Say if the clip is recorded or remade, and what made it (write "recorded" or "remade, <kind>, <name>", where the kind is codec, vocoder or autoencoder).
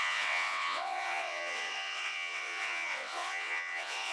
remade, vocoder, WaveNeXt